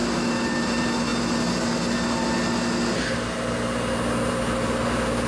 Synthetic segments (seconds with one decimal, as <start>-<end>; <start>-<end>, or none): none